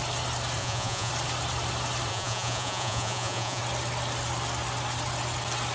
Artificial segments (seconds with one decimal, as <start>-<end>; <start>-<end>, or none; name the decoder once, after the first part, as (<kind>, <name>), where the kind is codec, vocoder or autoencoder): 0.6-1.1 (vocoder, Vocos); 2.1-3.6